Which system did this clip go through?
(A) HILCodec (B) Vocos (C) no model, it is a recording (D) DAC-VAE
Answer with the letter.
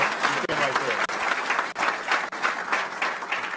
C